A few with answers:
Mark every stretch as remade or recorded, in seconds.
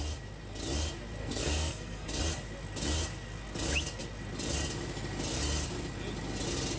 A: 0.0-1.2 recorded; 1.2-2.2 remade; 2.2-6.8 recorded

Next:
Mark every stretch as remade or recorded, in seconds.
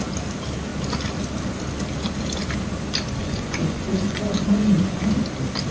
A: 0.0-3.2 recorded; 3.2-5.0 remade; 5.0-5.7 recorded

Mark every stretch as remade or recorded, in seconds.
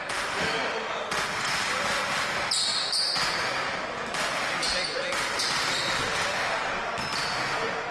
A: 0.0-7.9 recorded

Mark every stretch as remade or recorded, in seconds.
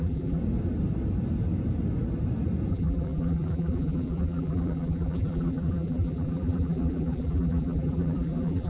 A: 0.0-0.4 remade; 0.4-2.7 recorded; 2.7-8.7 remade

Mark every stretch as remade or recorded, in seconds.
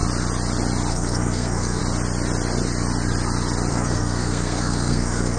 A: 0.0-0.9 recorded; 0.9-1.8 remade; 1.8-3.7 recorded; 3.7-5.4 remade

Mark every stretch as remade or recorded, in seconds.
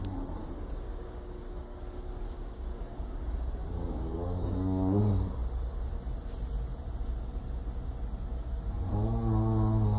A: 0.0-0.4 recorded; 0.4-5.0 remade; 5.0-10.0 recorded